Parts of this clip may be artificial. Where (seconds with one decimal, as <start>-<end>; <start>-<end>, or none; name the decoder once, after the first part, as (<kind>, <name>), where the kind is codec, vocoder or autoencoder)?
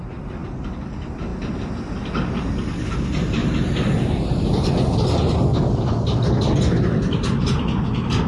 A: 0.4-0.9 (vocoder, BigVGAN v2); 3.4-4.3